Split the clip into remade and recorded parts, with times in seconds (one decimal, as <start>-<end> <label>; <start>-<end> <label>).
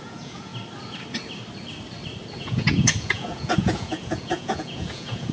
0.0-0.5 remade; 0.5-2.4 recorded; 2.4-5.3 remade